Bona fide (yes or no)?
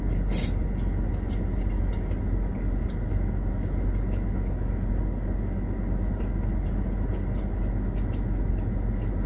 yes